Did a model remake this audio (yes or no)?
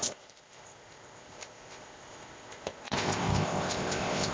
yes